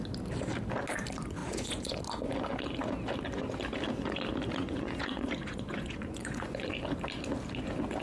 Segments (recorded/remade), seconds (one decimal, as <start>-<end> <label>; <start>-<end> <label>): 0.0-1.4 recorded; 1.4-2.0 remade; 2.0-4.6 recorded; 4.6-6.7 remade; 6.7-8.0 recorded